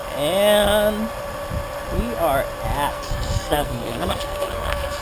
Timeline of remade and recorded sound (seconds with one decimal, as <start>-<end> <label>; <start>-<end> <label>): 0.0-2.9 recorded; 2.9-5.0 remade